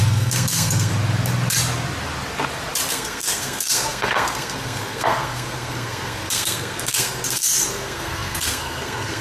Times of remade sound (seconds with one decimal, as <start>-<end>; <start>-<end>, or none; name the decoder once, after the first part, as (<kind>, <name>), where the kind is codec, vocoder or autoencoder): 0.0-0.9 (codec, SNAC); 2.9-9.2